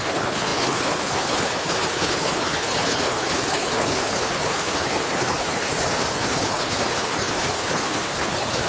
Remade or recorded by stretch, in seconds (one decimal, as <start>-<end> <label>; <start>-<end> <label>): 0.0-8.7 remade